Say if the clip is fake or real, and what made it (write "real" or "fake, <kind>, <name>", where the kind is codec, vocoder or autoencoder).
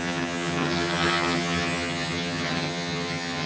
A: fake, vocoder, HiFi-GAN